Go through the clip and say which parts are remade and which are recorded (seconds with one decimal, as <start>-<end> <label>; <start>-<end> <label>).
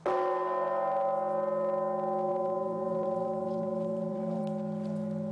0.0-2.3 recorded; 2.3-4.4 remade; 4.4-5.3 recorded